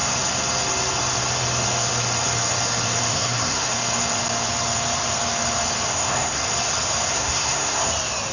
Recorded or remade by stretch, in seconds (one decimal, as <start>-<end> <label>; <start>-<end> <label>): 0.0-3.1 recorded; 3.1-3.7 remade; 3.7-5.9 recorded; 5.9-6.4 remade; 6.4-7.1 recorded; 7.1-7.9 remade; 7.9-8.3 recorded